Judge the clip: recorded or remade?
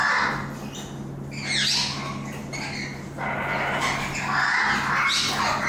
recorded